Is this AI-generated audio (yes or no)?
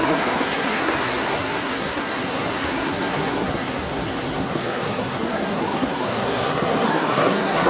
yes